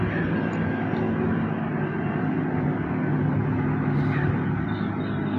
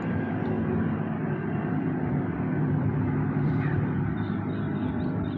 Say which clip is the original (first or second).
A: first